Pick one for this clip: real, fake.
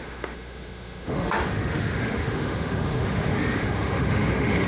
fake